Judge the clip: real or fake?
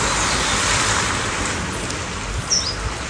real